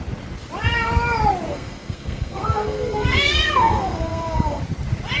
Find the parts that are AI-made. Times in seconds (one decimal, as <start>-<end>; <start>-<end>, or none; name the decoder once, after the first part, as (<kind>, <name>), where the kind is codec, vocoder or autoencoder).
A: 1.5-4.6 (codec, SNAC)